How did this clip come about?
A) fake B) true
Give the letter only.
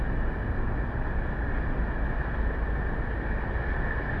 B